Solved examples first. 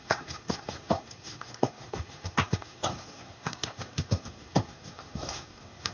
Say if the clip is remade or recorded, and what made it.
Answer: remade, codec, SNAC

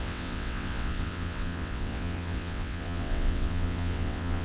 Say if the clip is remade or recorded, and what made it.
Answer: remade, vocoder, WaveNeXt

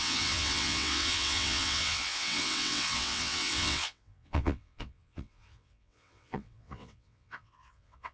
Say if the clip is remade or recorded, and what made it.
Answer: remade, vocoder, WaveNeXt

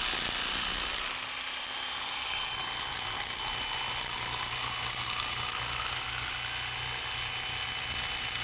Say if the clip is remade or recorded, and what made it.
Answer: recorded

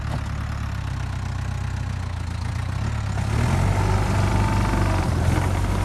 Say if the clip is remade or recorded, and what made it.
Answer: recorded